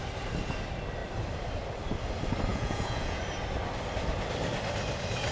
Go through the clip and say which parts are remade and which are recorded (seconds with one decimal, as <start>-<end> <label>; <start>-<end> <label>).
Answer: 0.0-2.5 recorded; 2.5-3.2 remade; 3.2-5.3 recorded

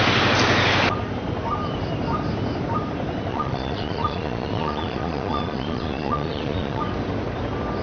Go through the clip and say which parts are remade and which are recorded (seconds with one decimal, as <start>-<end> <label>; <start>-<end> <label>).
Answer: 0.0-3.3 recorded; 3.3-6.8 remade; 6.8-7.8 recorded